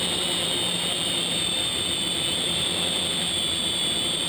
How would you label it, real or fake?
fake